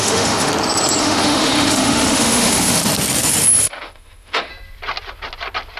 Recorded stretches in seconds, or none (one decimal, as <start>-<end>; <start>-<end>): 0.5-1.0; 2.8-3.6; 4.5-5.8